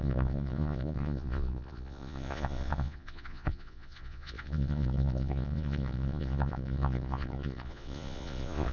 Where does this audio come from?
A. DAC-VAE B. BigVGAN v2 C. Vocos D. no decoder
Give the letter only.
C